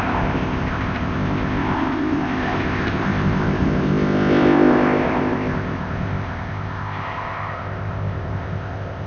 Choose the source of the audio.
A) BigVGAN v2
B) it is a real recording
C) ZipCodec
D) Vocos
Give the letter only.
C